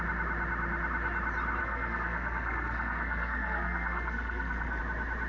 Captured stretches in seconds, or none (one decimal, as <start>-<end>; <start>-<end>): 0.0-1.6; 4.8-5.3